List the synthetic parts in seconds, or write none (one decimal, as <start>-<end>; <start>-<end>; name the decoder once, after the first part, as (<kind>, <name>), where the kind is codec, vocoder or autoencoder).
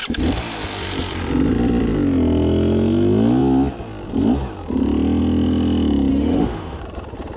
6.1-6.8 (autoencoder, DAC-VAE)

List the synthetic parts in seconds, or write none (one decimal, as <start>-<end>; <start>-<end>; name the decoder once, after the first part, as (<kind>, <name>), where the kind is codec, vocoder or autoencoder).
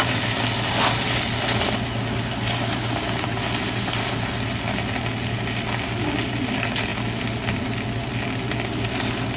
none